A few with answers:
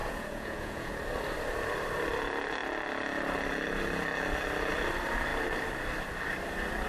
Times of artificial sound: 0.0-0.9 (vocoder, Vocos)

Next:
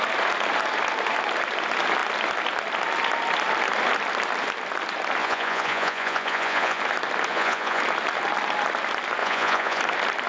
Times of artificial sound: 5.2-6.8 (vocoder, Vocos); 7.3-7.8; 9.2-9.8

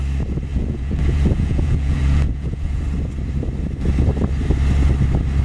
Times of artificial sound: 0.5-2.8 (vocoder, Vocos)

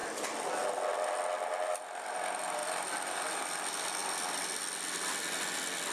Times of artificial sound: none